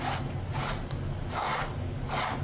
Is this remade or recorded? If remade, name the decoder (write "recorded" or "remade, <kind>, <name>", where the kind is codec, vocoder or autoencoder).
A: recorded